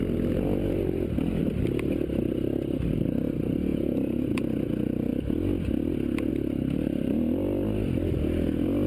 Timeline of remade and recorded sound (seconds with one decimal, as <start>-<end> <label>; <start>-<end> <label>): 0.0-3.7 recorded; 3.7-4.4 remade; 4.4-8.9 recorded